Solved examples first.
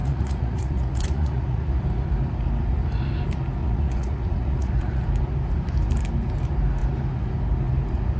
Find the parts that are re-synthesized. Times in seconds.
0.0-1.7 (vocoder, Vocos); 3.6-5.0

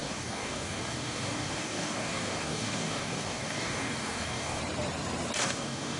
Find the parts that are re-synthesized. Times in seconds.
0.0-4.6 (codec, DAC); 5.4-6.0

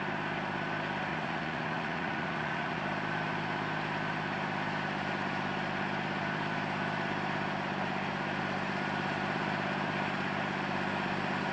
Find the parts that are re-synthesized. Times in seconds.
1.1-2.8 (vocoder, Vocos)

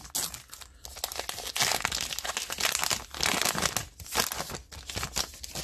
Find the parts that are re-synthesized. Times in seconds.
none

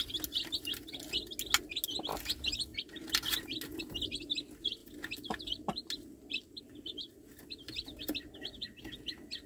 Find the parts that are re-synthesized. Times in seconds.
none

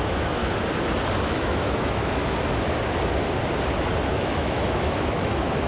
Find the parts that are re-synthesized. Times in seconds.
0.0-0.4 (autoencoder, DAC-VAE); 1.2-2.2; 4.1-5.7